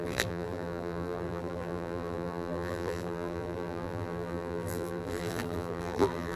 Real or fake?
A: fake